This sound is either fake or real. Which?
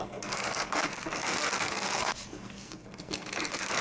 fake